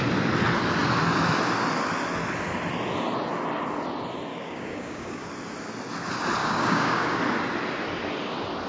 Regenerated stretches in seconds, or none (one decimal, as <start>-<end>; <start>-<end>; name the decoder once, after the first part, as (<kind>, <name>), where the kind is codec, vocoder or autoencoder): 4.3-5.3 (codec, DAC); 6.4-7.2